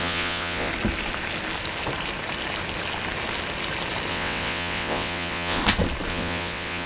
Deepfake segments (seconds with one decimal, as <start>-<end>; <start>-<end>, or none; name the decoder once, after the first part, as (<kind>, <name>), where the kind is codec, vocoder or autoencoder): 0.0-0.7 (vocoder, WaveNeXt); 4.1-5.6; 6.1-6.9